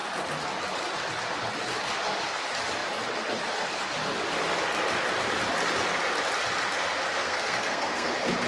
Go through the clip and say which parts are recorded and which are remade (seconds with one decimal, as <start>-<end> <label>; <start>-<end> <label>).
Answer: 0.0-7.2 recorded; 7.2-8.1 remade; 8.1-8.5 recorded